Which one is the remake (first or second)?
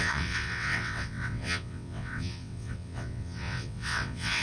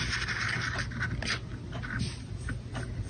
first